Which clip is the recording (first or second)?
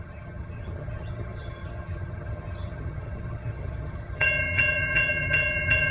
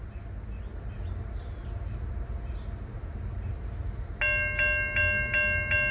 second